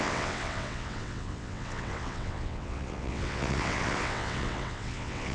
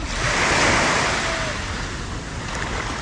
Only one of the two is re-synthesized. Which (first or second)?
first